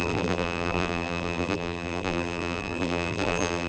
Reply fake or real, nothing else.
fake